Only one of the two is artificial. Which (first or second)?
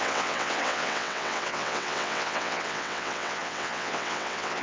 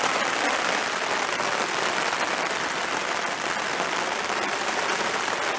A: first